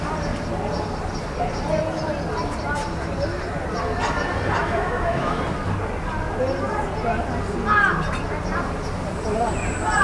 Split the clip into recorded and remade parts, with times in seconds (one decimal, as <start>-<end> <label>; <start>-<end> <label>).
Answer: 0.0-4.6 recorded; 4.6-5.4 remade; 5.4-10.0 recorded